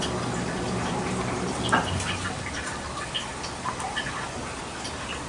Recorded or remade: recorded